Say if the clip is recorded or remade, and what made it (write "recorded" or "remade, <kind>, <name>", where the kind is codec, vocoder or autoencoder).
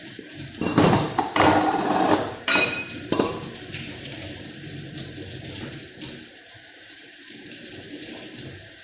remade, vocoder, BigVGAN v2